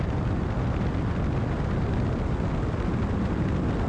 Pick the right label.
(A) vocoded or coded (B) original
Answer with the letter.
B